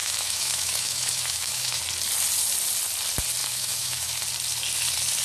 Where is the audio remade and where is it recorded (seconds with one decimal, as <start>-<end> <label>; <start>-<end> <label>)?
0.0-1.8 remade; 1.8-3.4 recorded; 3.4-4.2 remade; 4.2-5.2 recorded